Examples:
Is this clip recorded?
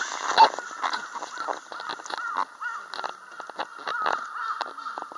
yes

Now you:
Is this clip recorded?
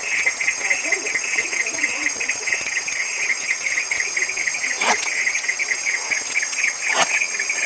no